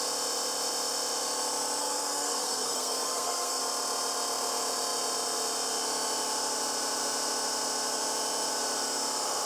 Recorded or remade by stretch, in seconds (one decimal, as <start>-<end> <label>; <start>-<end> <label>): 0.0-1.8 recorded; 1.8-3.6 remade; 3.6-9.5 recorded